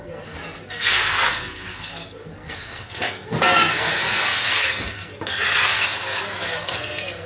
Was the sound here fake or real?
fake